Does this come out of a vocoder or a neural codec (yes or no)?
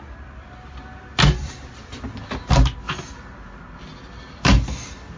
no